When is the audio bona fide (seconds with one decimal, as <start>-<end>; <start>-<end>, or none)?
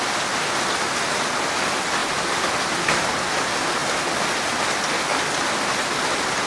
0.0-6.5